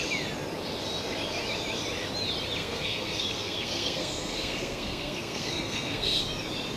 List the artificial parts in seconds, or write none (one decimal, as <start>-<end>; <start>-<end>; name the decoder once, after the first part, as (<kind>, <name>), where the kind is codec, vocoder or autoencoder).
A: 2.6-6.2 (codec, SNAC)